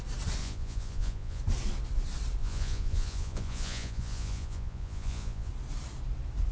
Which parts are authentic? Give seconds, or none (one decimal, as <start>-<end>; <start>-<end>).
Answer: 0.0-0.4; 1.4-2.4; 5.5-6.5